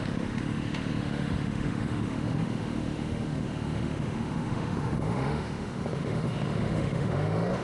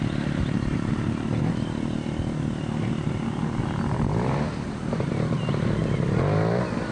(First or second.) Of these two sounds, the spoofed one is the first